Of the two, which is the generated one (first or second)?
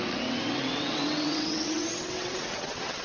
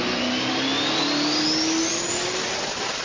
first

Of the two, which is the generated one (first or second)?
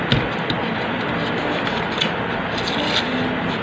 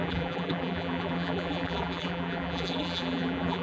second